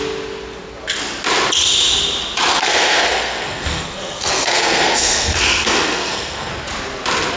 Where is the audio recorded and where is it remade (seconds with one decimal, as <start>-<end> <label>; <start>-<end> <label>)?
0.0-2.5 recorded; 2.5-6.5 remade; 6.5-7.4 recorded

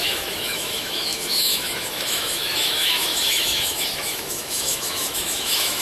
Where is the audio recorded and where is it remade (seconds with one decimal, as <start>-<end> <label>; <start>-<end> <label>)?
0.0-5.8 remade

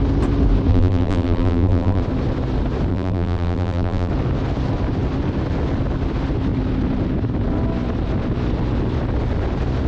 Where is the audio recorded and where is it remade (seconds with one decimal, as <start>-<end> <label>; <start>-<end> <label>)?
0.0-0.7 recorded; 0.7-2.0 remade; 2.0-2.9 recorded; 2.9-4.1 remade; 4.1-9.9 recorded

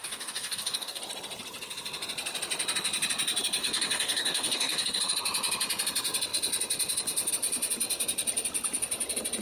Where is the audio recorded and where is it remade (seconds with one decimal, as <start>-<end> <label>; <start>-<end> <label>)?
0.0-1.0 remade; 1.0-3.6 recorded; 3.6-5.0 remade; 5.0-9.4 recorded

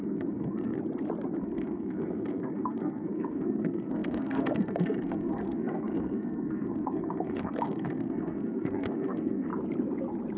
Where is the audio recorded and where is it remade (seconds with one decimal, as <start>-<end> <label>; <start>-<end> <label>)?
0.0-0.8 remade; 0.8-1.4 recorded; 1.4-9.5 remade; 9.5-10.4 recorded

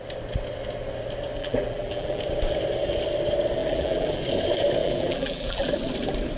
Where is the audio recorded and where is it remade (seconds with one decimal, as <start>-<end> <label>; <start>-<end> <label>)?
0.0-1.4 recorded; 1.4-2.2 remade; 2.2-3.6 recorded; 3.6-4.2 remade; 4.2-4.8 recorded; 4.8-5.6 remade; 5.6-6.4 recorded

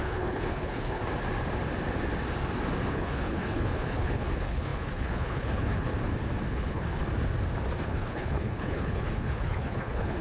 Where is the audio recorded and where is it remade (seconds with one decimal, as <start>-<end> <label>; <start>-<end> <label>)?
0.0-1.0 remade; 1.0-2.9 recorded; 2.9-5.9 remade; 5.9-6.5 recorded; 6.5-7.0 remade; 7.0-7.8 recorded; 7.8-10.2 remade

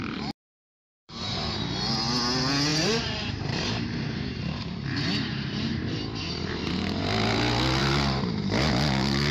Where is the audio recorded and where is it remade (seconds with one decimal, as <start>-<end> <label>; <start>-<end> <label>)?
0.0-0.4 recorded; 0.4-1.5 remade; 1.5-2.7 recorded; 2.7-6.7 remade; 6.7-7.8 recorded; 7.8-8.4 remade; 8.4-9.3 recorded